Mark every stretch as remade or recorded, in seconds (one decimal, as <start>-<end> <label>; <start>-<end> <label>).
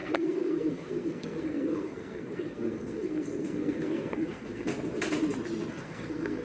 0.0-4.7 remade; 4.7-5.7 recorded; 5.7-6.4 remade